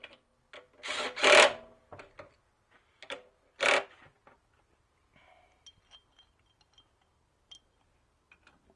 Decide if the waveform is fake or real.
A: real